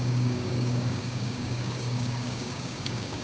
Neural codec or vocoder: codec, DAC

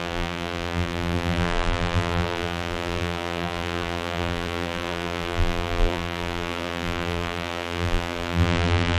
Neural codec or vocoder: vocoder, BigVGAN v2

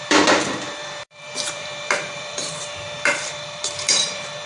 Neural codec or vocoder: vocoder, BigVGAN v2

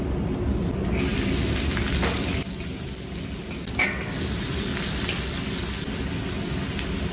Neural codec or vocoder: none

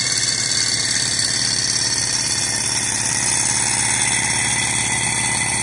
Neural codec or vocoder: none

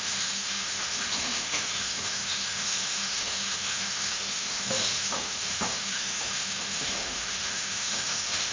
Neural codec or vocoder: autoencoder, DAC-VAE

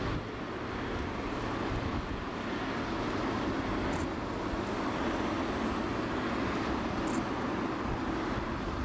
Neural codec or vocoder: none